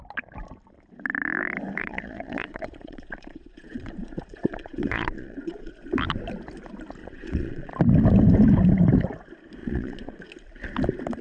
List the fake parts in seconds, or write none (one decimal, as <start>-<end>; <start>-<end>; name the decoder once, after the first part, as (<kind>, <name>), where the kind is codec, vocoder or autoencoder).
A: 1.8-5.7 (vocoder, Vocos); 7.0-7.7; 9.6-10.3